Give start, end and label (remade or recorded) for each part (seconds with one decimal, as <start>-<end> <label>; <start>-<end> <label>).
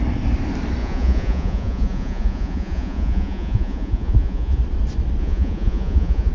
0.0-0.8 recorded; 0.8-4.6 remade; 4.6-5.2 recorded; 5.2-6.3 remade